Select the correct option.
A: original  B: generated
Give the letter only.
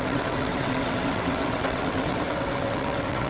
B